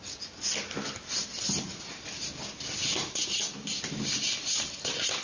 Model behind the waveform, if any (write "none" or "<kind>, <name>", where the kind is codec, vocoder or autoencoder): none